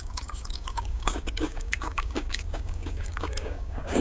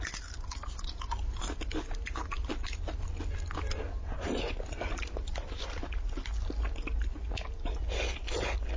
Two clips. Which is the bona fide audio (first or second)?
second